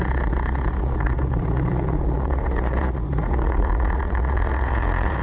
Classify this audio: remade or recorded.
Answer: remade